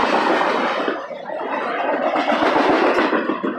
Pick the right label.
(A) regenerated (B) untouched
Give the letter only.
B